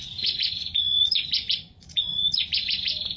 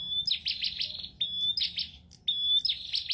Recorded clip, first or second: second